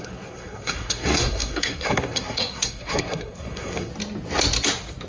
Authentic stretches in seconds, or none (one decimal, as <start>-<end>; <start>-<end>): 3.9-5.1